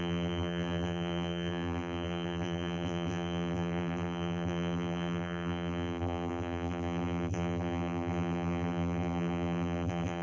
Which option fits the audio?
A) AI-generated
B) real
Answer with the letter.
A